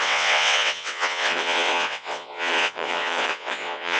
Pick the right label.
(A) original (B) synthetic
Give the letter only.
B